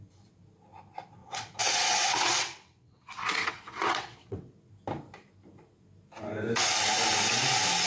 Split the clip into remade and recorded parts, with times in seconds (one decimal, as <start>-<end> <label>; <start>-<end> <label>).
0.0-1.2 recorded; 1.2-4.7 remade; 4.7-7.9 recorded